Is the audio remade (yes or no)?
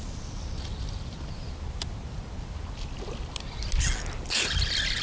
no